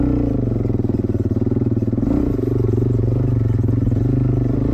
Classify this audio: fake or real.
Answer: real